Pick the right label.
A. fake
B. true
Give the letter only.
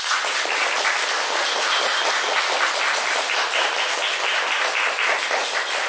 B